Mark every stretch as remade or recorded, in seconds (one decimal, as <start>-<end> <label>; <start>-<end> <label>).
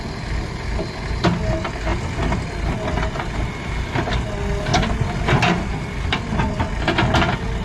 0.0-7.6 recorded